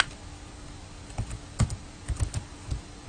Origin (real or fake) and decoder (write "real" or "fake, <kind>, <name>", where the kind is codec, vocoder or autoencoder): real